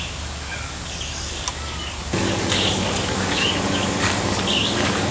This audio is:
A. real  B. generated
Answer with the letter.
B